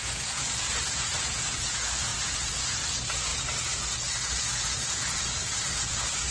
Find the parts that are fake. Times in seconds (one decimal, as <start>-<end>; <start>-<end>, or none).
0.0-3.3; 4.1-6.3